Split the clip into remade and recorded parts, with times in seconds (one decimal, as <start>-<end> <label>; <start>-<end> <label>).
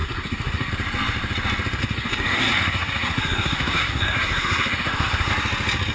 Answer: 0.0-0.7 remade; 0.7-1.8 recorded; 1.8-5.3 remade; 5.3-5.9 recorded